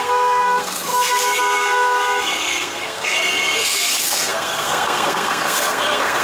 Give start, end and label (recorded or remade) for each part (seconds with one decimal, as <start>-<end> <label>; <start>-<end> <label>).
0.0-6.2 remade